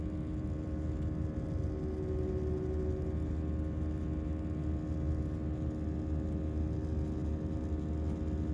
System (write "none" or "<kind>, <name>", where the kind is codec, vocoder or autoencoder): none